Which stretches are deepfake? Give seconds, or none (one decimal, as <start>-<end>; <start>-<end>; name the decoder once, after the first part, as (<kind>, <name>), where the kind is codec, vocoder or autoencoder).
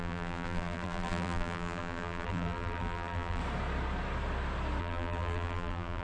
0.0-3.4 (vocoder, BigVGAN v2); 4.8-6.0